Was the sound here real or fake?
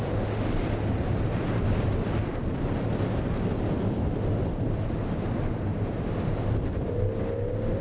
real